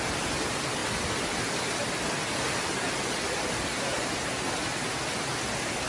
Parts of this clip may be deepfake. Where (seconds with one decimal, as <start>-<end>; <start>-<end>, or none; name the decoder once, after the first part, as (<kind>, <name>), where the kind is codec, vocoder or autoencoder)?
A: none